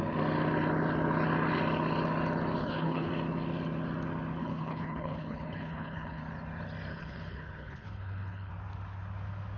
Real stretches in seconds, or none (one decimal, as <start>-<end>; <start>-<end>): 0.0-2.6; 3.1-4.4; 6.2-6.9; 8.5-9.6